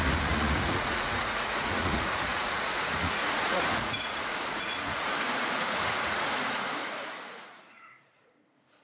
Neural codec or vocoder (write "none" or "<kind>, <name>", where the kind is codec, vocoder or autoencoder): vocoder, Vocos